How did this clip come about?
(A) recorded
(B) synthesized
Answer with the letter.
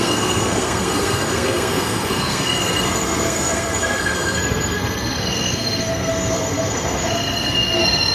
B